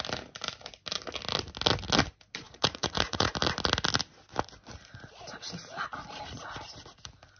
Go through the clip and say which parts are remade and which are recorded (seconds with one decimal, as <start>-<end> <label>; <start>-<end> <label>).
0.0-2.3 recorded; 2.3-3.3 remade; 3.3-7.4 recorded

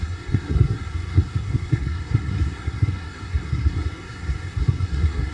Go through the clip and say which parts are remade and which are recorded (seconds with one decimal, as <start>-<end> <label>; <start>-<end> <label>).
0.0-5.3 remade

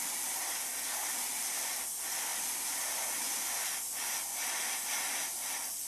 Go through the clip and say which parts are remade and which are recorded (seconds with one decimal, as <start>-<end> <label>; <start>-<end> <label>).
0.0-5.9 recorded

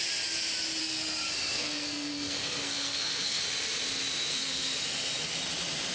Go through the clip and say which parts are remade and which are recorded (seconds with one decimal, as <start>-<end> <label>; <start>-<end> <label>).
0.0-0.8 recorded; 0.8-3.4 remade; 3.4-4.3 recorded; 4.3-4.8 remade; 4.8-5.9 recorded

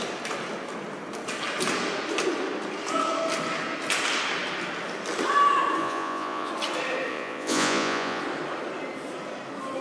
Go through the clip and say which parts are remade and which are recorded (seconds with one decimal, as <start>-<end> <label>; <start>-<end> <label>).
0.0-5.8 recorded; 5.8-6.5 remade; 6.5-7.1 recorded; 7.1-8.2 remade; 8.2-9.8 recorded

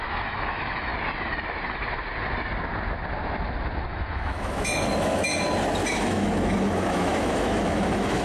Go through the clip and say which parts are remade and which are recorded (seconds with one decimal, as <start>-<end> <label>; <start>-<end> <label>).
0.0-0.9 remade; 0.9-3.8 recorded; 3.8-5.3 remade; 5.3-6.0 recorded; 6.0-8.2 remade

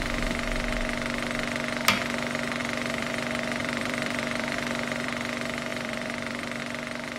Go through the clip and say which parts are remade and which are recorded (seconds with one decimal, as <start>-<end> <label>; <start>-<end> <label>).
0.0-2.6 recorded; 2.6-3.1 remade; 3.1-3.6 recorded; 3.6-5.3 remade; 5.3-5.7 recorded; 5.7-6.6 remade; 6.6-7.2 recorded

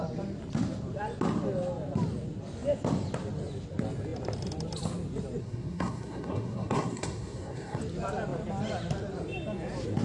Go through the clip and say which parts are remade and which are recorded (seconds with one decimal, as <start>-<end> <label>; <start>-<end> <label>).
0.0-5.4 recorded; 5.4-7.8 remade; 7.8-10.0 recorded